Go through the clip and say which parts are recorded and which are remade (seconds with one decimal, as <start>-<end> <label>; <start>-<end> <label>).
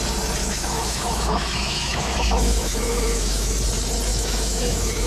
0.0-0.4 recorded; 0.4-3.5 remade; 3.5-4.1 recorded; 4.1-5.1 remade